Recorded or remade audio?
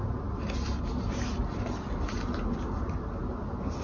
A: recorded